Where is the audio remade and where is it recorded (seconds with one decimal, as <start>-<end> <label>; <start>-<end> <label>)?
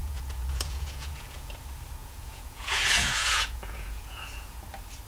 0.0-1.5 remade; 1.5-2.0 recorded; 2.0-4.6 remade; 4.6-5.1 recorded